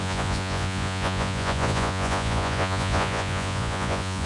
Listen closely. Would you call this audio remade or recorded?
remade